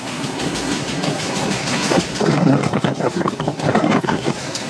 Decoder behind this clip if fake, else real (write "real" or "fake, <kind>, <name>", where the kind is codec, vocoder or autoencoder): fake, codec, SNAC